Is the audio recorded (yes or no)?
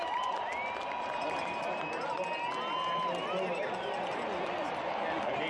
yes